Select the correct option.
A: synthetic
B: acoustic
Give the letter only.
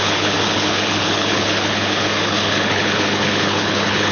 A